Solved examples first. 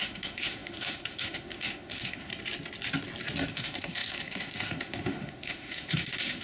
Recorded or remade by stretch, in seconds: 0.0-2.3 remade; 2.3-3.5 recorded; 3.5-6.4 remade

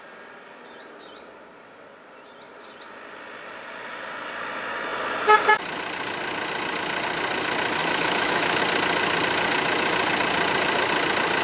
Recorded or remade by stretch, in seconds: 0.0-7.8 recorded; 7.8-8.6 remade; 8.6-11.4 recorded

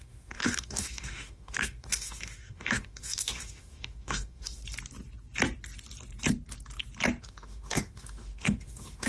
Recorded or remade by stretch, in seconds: 0.0-4.6 remade; 4.6-7.2 recorded; 7.2-9.1 remade